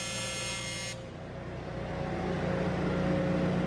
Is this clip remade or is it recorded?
recorded